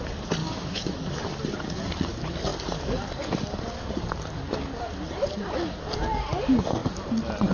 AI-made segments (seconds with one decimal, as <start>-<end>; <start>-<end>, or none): 0.4-1.2